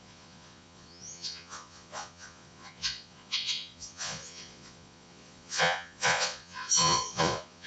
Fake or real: fake